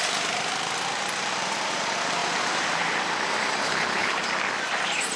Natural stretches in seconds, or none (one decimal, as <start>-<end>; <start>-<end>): 0.0-3.6; 4.2-5.2